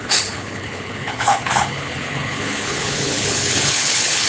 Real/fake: fake